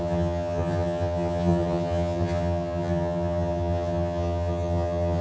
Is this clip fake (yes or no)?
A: yes